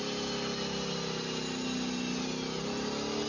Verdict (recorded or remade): recorded